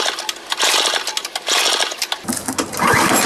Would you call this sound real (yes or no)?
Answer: yes